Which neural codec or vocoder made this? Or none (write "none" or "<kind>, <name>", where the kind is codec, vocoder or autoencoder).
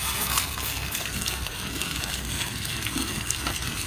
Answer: codec, SNAC